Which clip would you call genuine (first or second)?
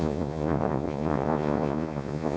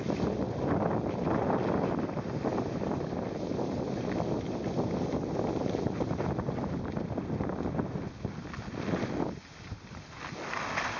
second